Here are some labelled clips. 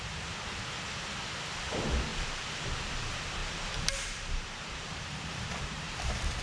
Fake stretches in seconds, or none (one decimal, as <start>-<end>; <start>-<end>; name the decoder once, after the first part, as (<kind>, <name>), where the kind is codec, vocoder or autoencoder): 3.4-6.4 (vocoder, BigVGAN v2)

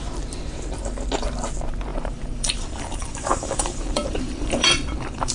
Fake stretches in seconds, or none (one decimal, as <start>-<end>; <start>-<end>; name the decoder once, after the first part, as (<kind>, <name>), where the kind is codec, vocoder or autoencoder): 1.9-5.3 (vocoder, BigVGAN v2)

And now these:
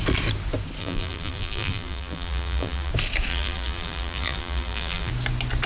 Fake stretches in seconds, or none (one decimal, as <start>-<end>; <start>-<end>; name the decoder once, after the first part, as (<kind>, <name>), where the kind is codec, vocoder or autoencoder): 0.8-2.9 (vocoder, BigVGAN v2); 3.3-5.1

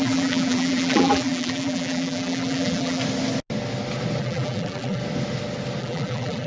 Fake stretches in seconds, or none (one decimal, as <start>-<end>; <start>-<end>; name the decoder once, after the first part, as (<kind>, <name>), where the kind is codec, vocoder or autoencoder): 0.0-3.0 (vocoder, BigVGAN v2); 4.2-5.0; 5.8-6.5